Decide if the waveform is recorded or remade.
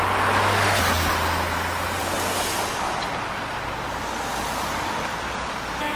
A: recorded